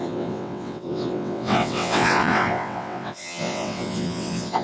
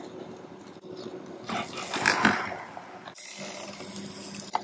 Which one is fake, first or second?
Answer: first